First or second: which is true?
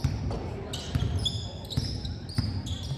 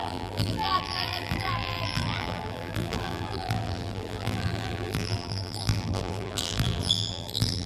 first